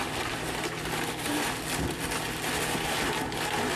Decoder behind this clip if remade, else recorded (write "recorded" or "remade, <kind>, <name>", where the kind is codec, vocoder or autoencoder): recorded